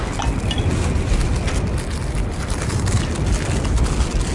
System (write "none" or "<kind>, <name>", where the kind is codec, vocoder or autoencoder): none